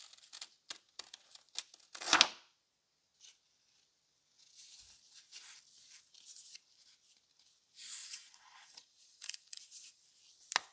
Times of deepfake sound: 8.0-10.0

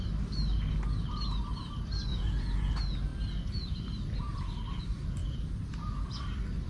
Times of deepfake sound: 2.1-2.7

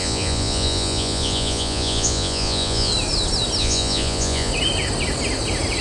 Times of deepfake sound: 0.0-2.9; 3.6-4.5

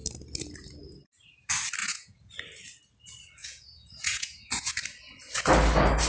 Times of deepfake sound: 1.8-2.3; 3.4-4.7

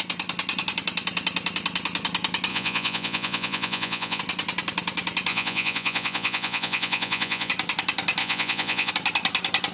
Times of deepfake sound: 2.5-4.2; 5.3-7.5; 8.2-8.9

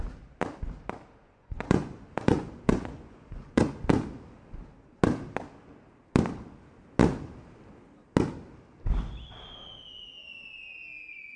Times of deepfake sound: 1.2-3.8